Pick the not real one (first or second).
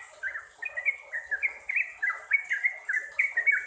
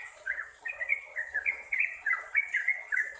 second